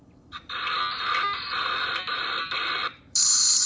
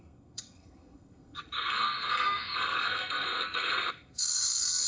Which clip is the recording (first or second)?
first